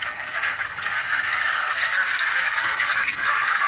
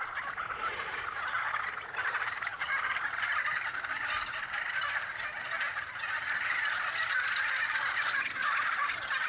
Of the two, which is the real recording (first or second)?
second